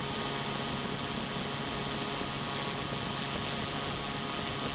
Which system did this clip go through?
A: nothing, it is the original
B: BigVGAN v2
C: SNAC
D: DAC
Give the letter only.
A